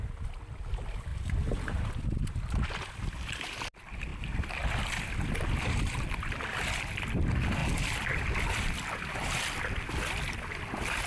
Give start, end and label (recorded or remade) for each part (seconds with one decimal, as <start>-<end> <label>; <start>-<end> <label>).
0.0-1.1 recorded; 1.1-1.9 remade; 1.9-11.1 recorded